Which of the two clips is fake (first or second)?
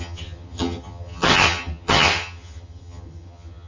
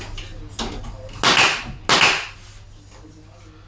first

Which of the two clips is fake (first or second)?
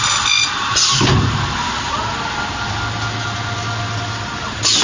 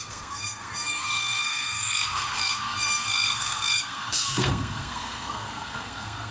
second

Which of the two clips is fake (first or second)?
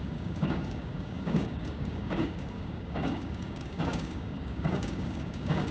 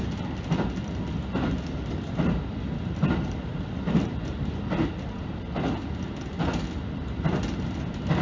first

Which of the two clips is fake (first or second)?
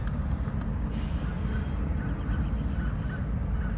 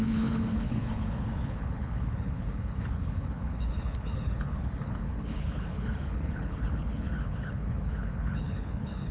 second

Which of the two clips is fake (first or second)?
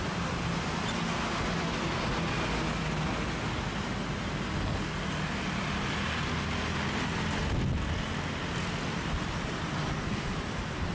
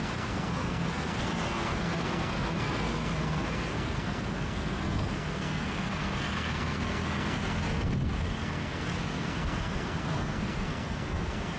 second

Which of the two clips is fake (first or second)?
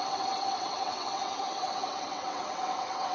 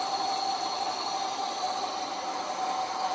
first